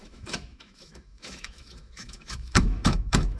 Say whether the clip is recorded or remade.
remade